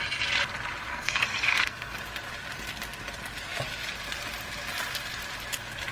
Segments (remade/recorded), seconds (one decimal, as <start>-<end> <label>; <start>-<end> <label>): 0.0-0.9 recorded; 0.9-2.0 remade; 2.0-5.9 recorded